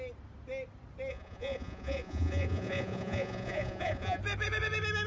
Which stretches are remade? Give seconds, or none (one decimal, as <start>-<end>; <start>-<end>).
1.1-4.2